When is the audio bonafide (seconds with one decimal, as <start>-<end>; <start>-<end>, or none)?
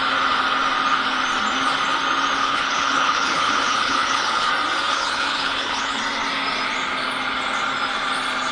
0.0-2.4; 4.5-4.9; 6.0-8.5